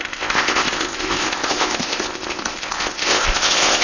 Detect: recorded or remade remade